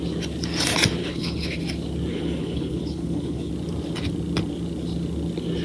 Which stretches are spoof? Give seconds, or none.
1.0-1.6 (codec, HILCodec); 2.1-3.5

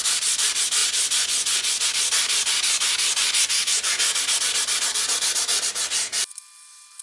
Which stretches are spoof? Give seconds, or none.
0.8-1.9 (vocoder, Vocos); 3.2-4.2

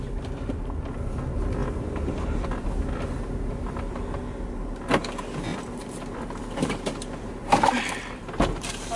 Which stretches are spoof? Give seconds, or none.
5.5-9.0 (vocoder, BigVGAN v2)

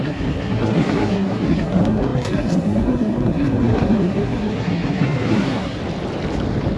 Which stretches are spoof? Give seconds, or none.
0.0-5.8 (codec, SNAC)